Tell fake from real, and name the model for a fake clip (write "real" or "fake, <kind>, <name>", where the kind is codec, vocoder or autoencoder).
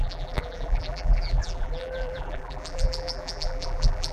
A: fake, vocoder, BigVGAN v2